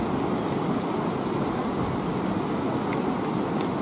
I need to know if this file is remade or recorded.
recorded